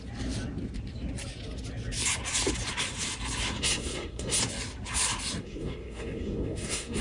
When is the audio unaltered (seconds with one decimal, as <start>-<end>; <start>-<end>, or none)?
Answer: 0.0-3.6; 4.4-5.4